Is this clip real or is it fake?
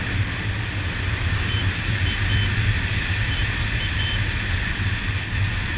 real